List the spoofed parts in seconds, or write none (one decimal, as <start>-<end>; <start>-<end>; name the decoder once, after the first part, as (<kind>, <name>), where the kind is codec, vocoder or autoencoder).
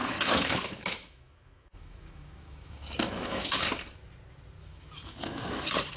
0.0-3.6 (autoencoder, DAC-VAE); 4.6-5.6